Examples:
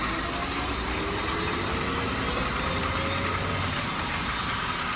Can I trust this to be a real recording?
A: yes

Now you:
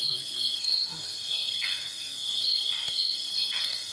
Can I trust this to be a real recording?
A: no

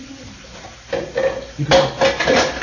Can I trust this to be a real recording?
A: yes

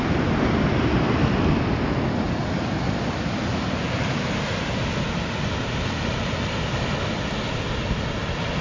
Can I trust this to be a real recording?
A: yes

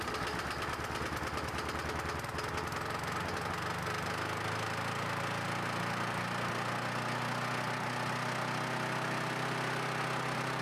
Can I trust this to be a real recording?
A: yes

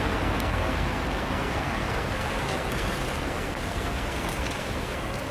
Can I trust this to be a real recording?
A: no